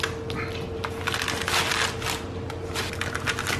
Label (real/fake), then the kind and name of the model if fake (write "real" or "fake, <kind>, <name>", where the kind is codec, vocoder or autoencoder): real